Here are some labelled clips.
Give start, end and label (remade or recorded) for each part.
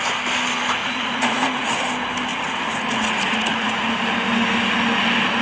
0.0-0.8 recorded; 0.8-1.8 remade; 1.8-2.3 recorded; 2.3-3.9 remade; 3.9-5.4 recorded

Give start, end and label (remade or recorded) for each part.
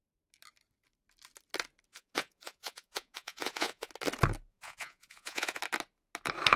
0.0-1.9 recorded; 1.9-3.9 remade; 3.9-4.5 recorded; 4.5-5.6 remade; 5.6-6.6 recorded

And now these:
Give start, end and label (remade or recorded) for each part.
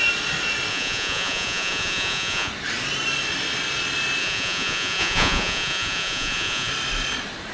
0.0-0.7 recorded; 0.7-2.5 remade; 2.5-4.2 recorded; 4.2-6.7 remade; 6.7-7.5 recorded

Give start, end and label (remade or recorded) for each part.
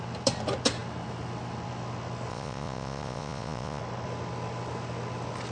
0.0-2.3 recorded; 2.3-3.8 remade; 3.8-5.5 recorded